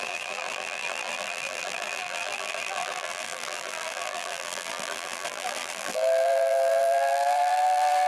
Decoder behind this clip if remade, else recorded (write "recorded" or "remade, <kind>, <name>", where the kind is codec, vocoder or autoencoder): remade, vocoder, BigVGAN v2